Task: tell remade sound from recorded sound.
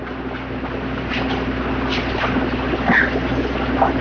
recorded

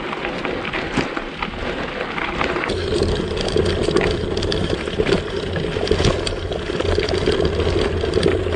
recorded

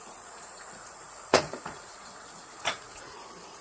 remade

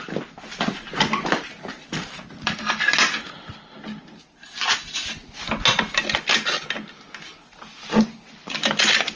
recorded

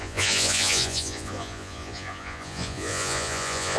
remade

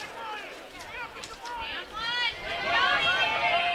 recorded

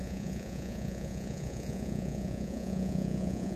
remade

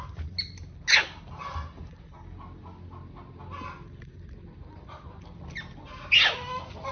recorded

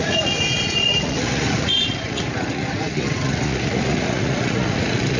remade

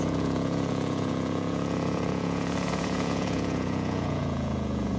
remade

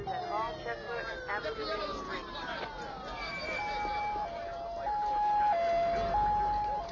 recorded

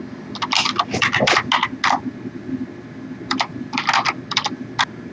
recorded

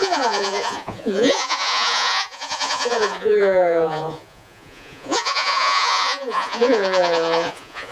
remade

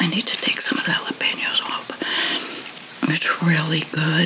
recorded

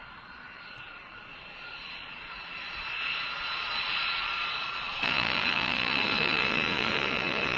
remade